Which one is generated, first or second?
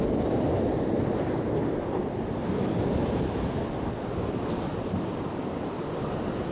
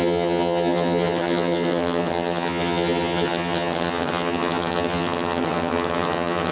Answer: second